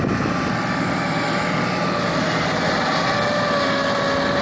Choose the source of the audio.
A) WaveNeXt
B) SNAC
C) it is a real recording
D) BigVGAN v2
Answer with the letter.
C